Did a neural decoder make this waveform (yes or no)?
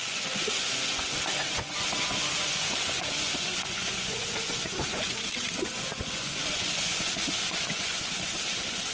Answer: yes